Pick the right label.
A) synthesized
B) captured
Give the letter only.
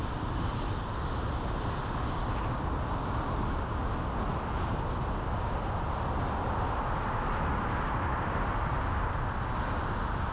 B